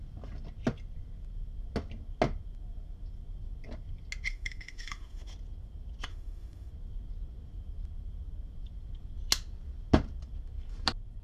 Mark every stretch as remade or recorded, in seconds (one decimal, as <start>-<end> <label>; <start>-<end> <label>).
0.0-4.3 recorded; 4.3-5.3 remade; 5.3-6.1 recorded; 6.1-6.7 remade; 6.7-11.2 recorded